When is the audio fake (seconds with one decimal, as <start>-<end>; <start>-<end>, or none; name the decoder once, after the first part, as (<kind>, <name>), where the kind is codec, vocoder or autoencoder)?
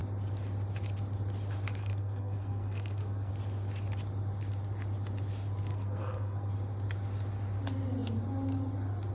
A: 1.8-3.3 (codec, SNAC); 5.7-6.5